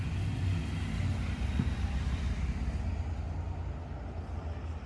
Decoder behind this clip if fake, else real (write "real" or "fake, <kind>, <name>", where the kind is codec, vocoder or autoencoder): real